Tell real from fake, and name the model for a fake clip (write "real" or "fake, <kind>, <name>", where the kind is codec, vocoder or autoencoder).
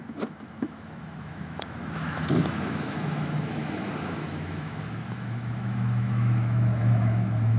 fake, autoencoder, DAC-VAE